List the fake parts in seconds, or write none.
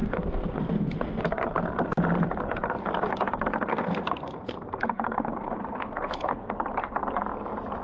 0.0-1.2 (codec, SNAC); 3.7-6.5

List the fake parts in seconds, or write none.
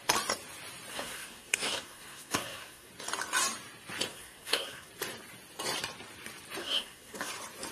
0.9-2.9 (codec, SNAC); 4.1-4.9; 6.6-7.3